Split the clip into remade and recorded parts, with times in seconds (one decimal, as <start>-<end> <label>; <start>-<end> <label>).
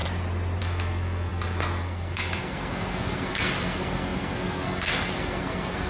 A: 0.0-0.6 recorded; 0.6-5.9 remade